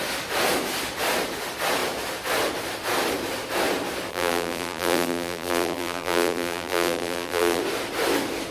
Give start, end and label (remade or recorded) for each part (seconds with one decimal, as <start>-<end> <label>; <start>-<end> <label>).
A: 0.0-4.1 recorded; 4.1-7.6 remade; 7.6-8.5 recorded